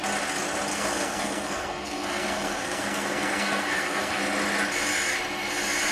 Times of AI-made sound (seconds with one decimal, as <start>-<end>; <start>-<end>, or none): 0.7-4.2